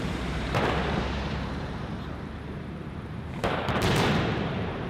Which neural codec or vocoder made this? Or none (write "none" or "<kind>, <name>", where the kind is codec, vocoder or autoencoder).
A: vocoder, BigVGAN v2